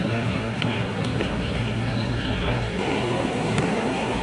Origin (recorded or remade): remade